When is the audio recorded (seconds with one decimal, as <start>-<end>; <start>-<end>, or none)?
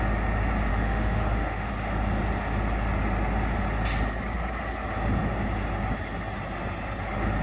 0.0-0.7; 1.7-7.4